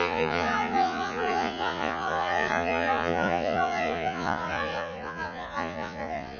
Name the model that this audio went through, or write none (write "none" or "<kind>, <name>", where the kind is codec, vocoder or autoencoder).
vocoder, Vocos